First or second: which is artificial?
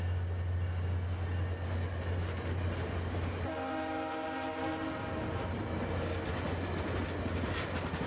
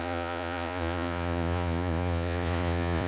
second